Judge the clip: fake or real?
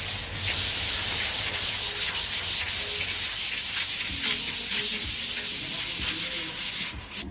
real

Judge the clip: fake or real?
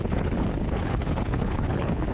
fake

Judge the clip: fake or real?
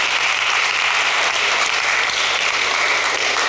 real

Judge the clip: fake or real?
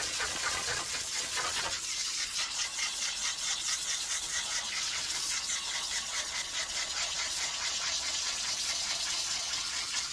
fake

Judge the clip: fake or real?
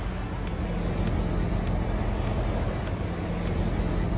real